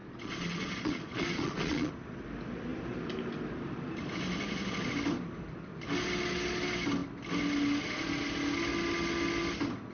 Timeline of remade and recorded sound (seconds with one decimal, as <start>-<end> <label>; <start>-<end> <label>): 0.0-1.9 remade; 1.9-9.9 recorded